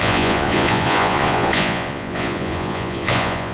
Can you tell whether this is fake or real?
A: fake